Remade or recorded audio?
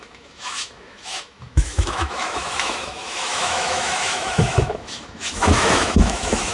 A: remade